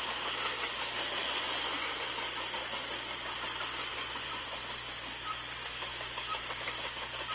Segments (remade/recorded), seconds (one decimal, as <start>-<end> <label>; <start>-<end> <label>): 0.0-1.2 recorded; 1.2-2.1 remade; 2.1-3.9 recorded; 3.9-4.6 remade; 4.6-7.3 recorded